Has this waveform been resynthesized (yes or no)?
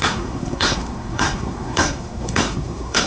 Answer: yes